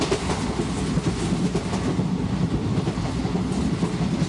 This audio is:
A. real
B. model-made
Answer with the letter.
A